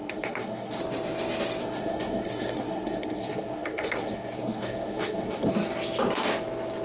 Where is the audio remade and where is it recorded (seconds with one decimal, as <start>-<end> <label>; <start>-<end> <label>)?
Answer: 0.0-0.8 remade; 0.8-1.6 recorded; 1.6-5.5 remade; 5.5-6.8 recorded